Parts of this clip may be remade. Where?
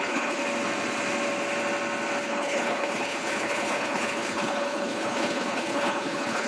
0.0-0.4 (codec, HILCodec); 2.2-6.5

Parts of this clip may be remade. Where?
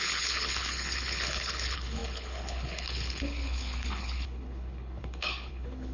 0.0-5.9 (codec, HILCodec)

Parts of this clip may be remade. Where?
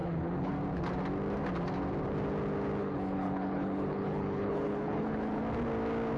0.0-0.5 (codec, HILCodec); 2.8-5.4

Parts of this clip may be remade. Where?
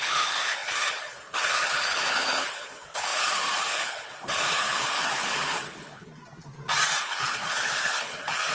0.0-6.2 (codec, HILCodec); 7.0-8.5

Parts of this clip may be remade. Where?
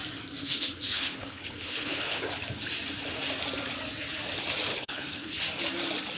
0.4-2.2 (codec, HILCodec); 4.7-5.4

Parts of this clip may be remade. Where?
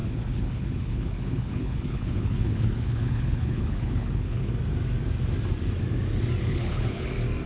0.0-4.5 (codec, HILCodec); 6.5-7.1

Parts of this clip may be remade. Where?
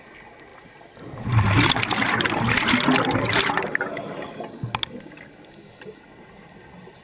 none